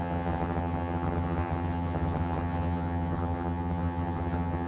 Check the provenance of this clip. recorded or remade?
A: remade